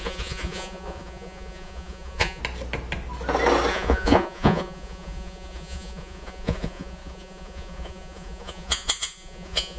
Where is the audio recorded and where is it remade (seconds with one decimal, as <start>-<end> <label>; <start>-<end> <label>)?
0.0-2.4 remade; 2.4-3.7 recorded; 3.7-9.8 remade